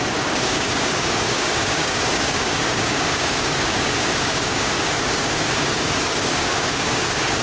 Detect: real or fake fake